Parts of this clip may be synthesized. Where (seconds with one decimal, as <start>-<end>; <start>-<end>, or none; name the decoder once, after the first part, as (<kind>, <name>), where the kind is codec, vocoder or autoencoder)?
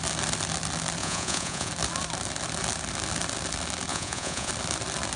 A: 1.0-1.7 (vocoder, Vocos); 3.9-4.5